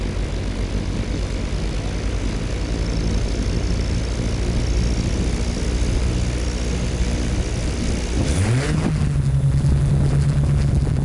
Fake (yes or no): no